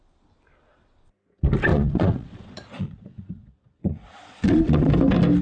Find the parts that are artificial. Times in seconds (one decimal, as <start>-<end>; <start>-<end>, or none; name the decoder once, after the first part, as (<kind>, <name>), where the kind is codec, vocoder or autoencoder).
1.7-4.9 (vocoder, Vocos)